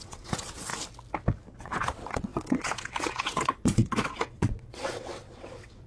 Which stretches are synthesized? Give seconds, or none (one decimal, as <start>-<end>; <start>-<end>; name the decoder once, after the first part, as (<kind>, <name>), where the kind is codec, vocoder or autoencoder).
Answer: 0.0-0.7 (vocoder, WaveNeXt); 1.6-5.9